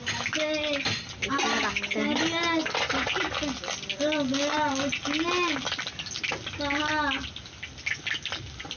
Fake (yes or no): no